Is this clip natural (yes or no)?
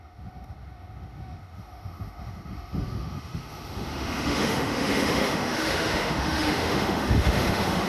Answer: no